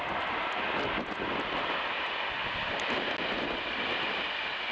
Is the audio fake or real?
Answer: real